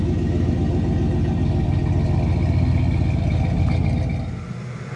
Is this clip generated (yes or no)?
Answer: no